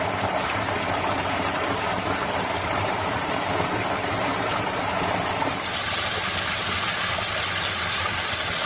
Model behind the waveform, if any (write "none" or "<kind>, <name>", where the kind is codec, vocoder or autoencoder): none